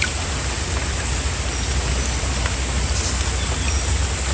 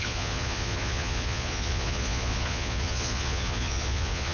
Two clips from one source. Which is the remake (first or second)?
second